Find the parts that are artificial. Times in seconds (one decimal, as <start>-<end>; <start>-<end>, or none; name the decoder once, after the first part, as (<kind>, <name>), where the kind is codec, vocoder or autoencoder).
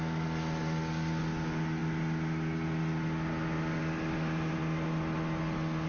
none